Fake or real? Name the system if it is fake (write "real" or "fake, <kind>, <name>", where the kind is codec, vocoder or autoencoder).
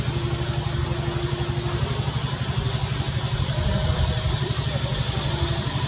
real